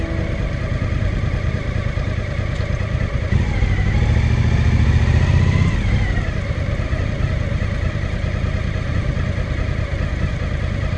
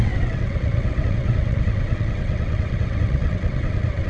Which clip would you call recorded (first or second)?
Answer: first